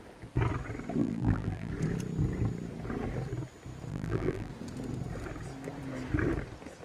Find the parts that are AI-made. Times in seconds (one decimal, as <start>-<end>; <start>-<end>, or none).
1.0-1.7; 3.9-4.5